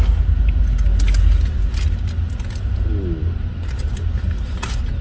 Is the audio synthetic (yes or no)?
no